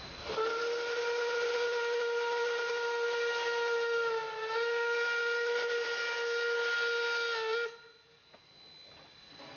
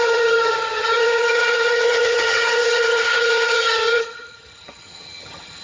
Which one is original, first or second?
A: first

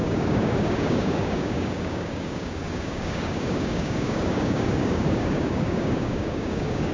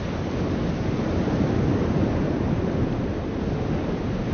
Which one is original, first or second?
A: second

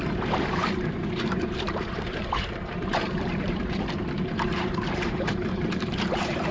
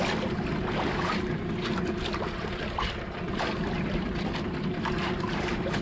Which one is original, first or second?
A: second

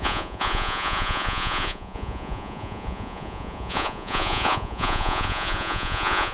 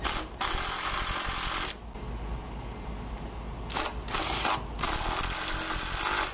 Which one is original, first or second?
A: second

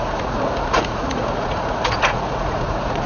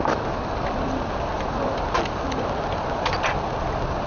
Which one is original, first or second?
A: second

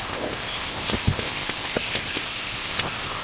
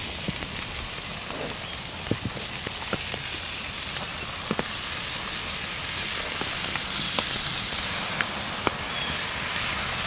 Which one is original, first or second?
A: second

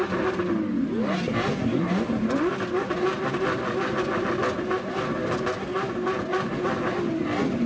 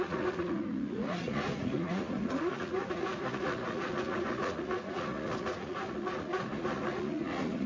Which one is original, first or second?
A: first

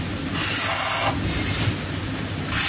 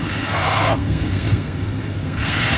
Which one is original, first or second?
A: first